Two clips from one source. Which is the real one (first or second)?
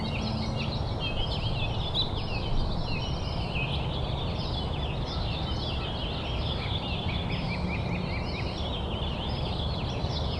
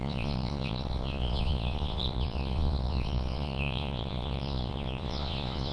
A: first